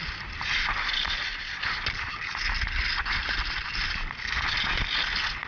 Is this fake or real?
real